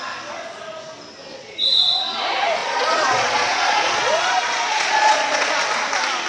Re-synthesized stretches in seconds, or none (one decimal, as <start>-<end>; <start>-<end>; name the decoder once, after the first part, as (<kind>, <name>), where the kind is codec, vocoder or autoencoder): 1.3-2.0 (vocoder, Vocos); 2.6-5.5